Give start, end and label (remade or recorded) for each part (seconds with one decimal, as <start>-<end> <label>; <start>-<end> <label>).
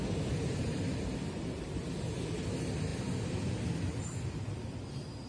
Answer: 0.0-5.3 recorded